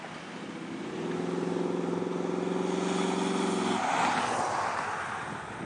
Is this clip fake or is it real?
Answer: real